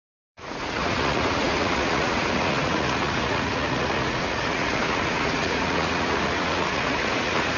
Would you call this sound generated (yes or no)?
yes